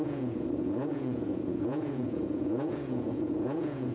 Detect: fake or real fake